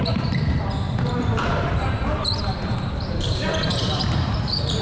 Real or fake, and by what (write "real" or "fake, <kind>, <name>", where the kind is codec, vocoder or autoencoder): fake, vocoder, BigVGAN v2